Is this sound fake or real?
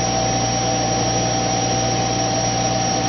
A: real